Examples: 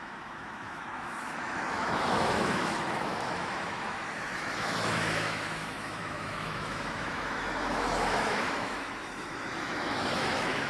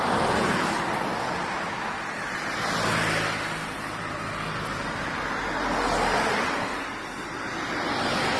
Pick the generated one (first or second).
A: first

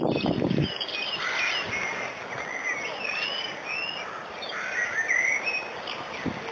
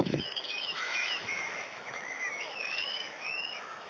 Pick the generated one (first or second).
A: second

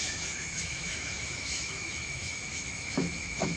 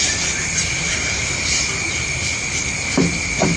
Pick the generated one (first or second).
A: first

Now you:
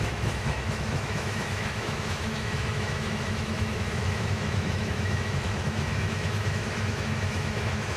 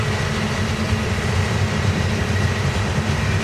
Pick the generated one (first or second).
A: first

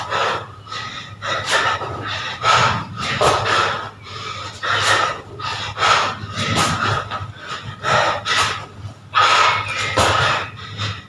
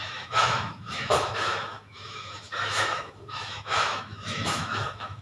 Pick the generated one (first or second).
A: second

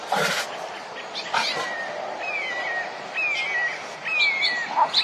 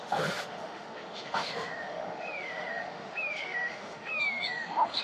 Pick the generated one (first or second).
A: second